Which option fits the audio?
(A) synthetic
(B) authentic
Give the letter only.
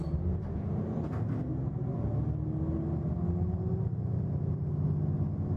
B